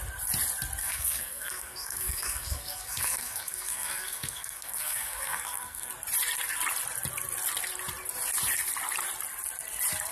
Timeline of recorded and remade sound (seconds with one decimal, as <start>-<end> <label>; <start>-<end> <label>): 0.0-0.8 recorded; 0.8-5.9 remade; 5.9-10.1 recorded